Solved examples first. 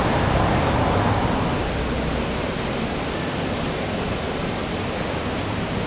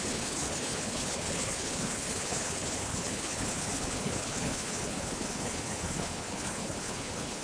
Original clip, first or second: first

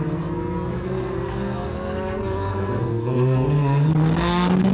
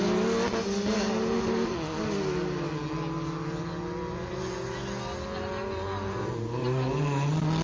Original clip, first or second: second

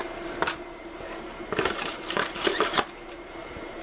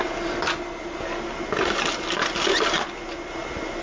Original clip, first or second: second